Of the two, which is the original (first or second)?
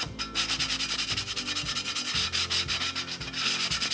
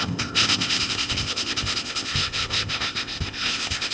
first